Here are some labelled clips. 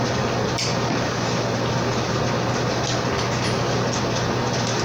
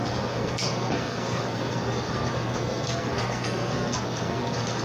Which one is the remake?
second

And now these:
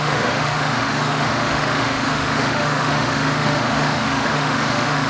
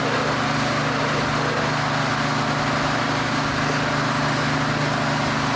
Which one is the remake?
first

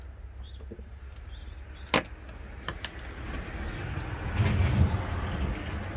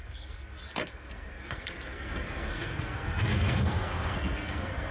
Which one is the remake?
second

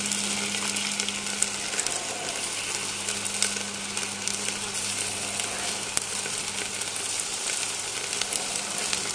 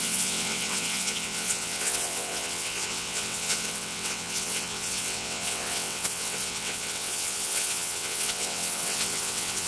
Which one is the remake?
second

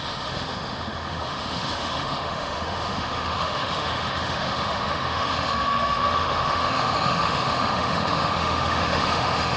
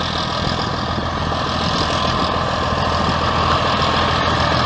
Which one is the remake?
first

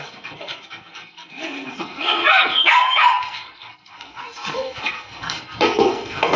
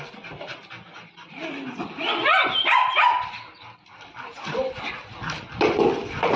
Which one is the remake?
first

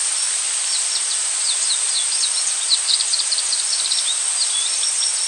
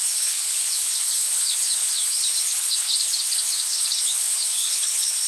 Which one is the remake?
second